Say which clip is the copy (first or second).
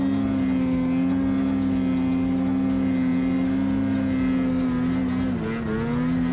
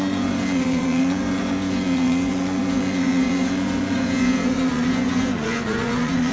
second